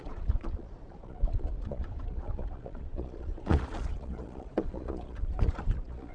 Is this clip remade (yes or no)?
yes